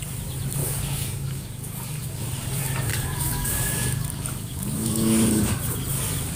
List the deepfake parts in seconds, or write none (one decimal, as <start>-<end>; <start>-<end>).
0.6-2.3; 2.9-5.5